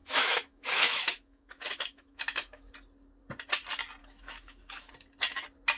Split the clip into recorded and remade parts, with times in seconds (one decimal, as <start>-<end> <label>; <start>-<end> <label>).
0.0-2.7 remade; 2.7-4.0 recorded; 4.0-4.9 remade; 4.9-5.8 recorded